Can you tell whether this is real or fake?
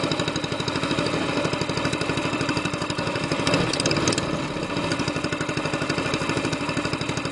real